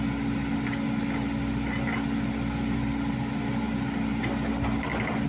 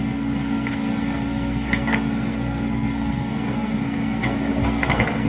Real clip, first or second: first